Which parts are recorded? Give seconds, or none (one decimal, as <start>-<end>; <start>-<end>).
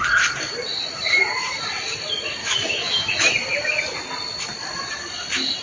0.0-2.4; 3.1-5.6